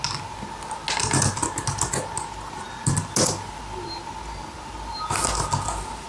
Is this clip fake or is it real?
real